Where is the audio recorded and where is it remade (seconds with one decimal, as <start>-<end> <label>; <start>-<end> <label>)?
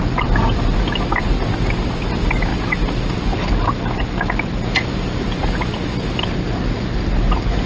0.0-7.7 recorded